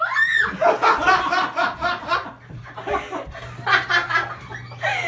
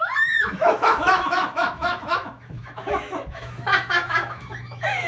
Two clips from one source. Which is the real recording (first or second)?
first